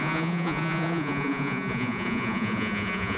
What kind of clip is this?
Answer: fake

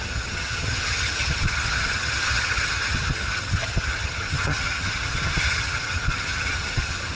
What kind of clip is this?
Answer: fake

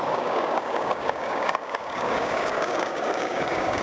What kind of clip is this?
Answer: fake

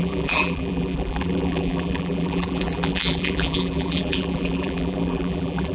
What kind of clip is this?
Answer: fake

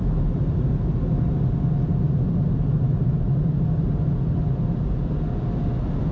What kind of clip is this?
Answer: real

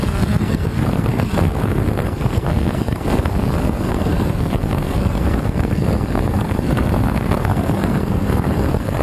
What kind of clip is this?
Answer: fake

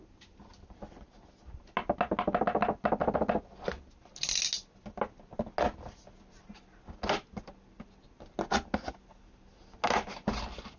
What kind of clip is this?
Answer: real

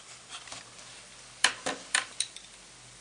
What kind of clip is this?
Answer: fake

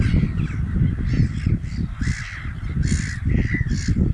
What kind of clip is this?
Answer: real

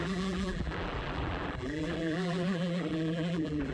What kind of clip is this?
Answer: fake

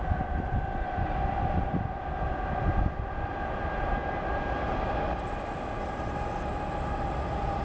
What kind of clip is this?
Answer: real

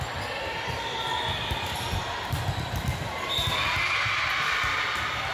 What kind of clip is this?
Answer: real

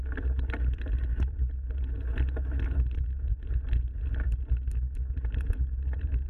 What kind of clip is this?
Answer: real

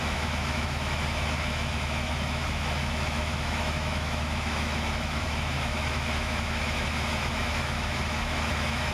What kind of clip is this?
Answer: fake